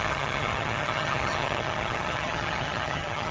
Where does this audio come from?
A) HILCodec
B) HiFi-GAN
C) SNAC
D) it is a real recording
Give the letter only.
B